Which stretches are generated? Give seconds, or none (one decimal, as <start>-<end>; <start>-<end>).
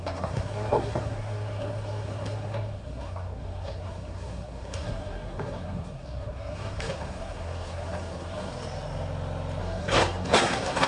0.0-8.5; 9.6-10.9